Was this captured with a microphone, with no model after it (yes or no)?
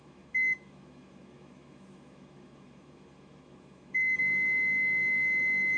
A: no